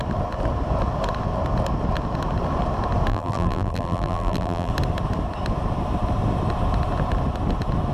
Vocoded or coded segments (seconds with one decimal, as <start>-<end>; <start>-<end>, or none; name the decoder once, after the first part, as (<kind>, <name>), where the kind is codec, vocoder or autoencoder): 3.1-4.7 (vocoder, BigVGAN v2)